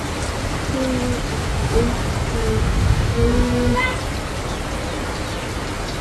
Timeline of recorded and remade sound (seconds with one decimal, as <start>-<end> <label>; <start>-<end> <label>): 0.0-1.3 recorded; 1.3-1.8 remade; 1.8-2.4 recorded; 2.4-3.8 remade; 3.8-6.0 recorded